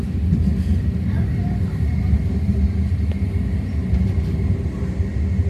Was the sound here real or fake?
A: real